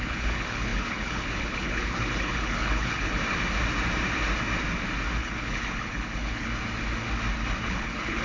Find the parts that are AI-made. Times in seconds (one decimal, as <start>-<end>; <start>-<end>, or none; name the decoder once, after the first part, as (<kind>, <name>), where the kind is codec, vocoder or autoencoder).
0.0-3.2 (codec, HILCodec); 5.2-6.5; 7.6-8.2